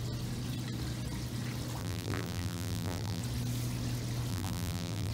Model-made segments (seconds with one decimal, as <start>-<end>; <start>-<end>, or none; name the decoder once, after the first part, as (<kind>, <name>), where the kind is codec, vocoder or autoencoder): 1.8-3.2 (vocoder, BigVGAN v2); 4.3-5.1

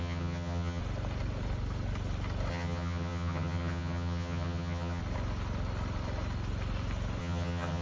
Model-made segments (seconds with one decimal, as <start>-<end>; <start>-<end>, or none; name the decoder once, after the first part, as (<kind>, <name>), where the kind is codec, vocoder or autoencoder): 0.0-0.8 (vocoder, HiFi-GAN); 2.5-5.0; 7.2-7.8

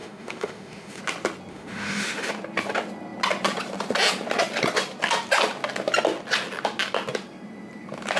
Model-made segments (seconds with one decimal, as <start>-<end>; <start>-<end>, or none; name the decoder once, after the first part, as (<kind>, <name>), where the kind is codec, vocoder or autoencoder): 0.0-1.0 (autoencoder, DAC-VAE); 1.5-2.3